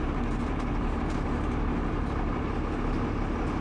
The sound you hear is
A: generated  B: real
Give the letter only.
B